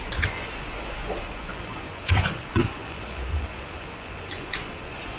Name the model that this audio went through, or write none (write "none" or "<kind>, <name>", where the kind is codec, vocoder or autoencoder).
vocoder, Vocos